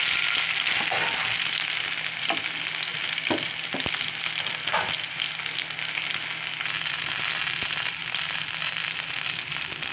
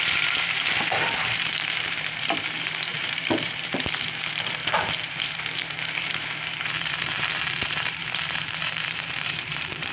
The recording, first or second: first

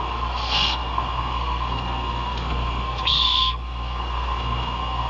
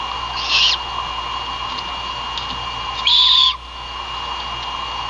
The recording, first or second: second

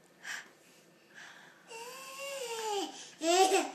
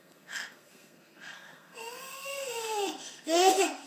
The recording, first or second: first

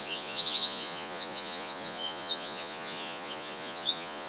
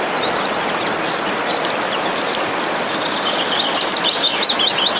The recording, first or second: second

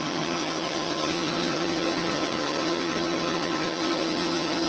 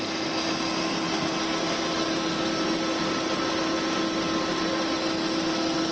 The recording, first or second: second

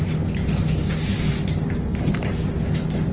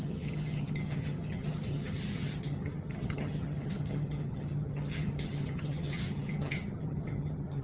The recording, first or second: first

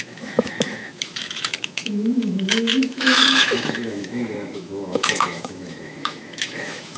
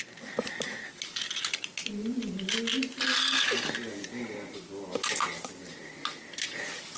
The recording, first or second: second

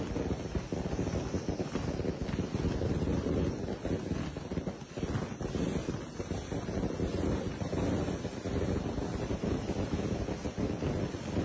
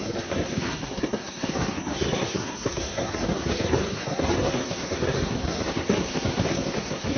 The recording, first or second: first